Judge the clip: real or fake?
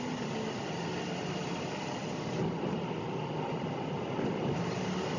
real